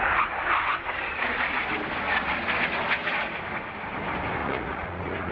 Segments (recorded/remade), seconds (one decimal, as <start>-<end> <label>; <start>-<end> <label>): 0.0-4.4 recorded; 4.4-5.3 remade